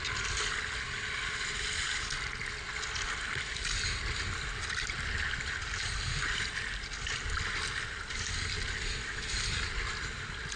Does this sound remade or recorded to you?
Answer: recorded